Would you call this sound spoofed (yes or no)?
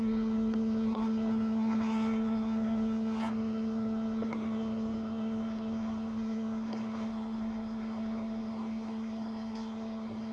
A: yes